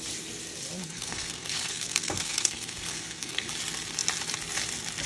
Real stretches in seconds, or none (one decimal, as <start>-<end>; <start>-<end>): 0.0-0.8; 3.5-5.1